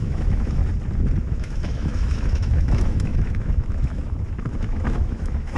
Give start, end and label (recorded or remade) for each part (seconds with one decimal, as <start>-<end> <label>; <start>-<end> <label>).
0.0-0.6 remade; 0.6-1.2 recorded; 1.2-5.6 remade

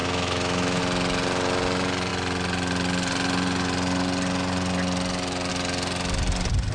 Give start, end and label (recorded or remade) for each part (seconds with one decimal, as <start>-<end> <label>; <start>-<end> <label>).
0.0-0.8 remade; 0.8-6.7 recorded